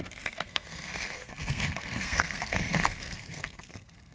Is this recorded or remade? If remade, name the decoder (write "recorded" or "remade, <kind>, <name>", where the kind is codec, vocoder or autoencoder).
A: remade, codec, SNAC